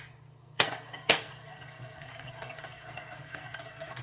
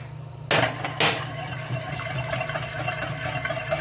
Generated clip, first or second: first